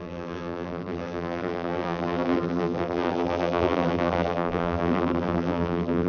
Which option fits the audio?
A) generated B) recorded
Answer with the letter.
A